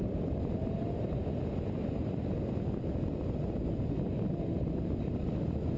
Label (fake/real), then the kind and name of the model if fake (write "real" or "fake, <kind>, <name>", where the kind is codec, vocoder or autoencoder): real